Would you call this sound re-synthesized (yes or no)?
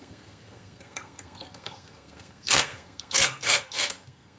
yes